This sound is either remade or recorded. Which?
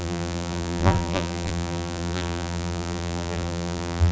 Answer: remade